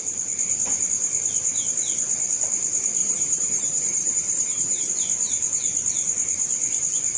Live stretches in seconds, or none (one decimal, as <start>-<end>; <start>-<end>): 0.0-3.0; 4.9-7.2

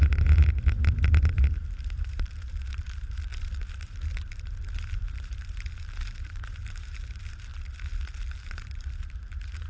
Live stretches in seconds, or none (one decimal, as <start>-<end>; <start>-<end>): 7.5-8.3

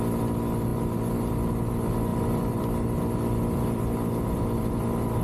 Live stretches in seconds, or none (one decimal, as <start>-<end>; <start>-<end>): 0.0-5.2

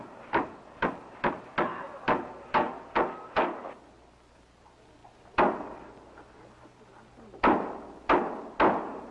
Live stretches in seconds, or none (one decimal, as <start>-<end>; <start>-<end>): 0.0-9.1

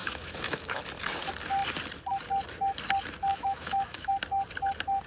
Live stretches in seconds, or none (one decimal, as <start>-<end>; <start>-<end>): 0.8-3.3; 4.1-5.1

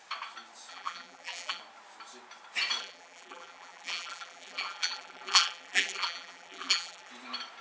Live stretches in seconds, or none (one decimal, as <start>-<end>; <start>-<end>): 0.0-0.7; 1.6-2.8; 7.1-7.6